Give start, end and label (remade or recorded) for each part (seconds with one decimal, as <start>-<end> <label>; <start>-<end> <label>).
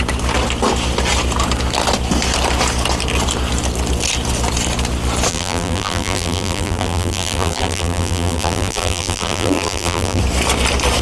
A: 0.0-5.3 recorded; 5.3-10.2 remade; 10.2-11.0 recorded